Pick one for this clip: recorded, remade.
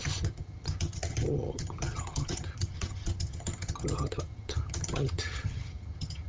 remade